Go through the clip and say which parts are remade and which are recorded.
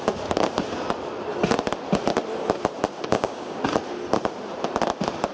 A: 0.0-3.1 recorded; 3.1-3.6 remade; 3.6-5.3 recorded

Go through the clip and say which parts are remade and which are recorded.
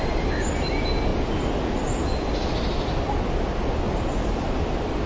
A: 0.0-5.1 recorded